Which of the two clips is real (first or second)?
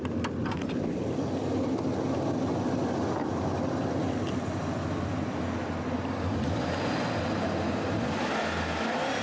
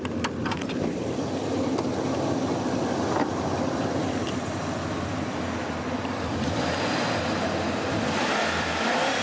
first